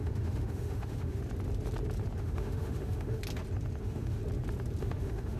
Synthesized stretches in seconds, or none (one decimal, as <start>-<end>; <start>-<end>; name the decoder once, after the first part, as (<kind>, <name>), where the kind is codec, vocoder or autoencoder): 0.0-1.2 (autoencoder, DAC-VAE); 2.2-3.2; 3.8-4.2; 4.8-5.4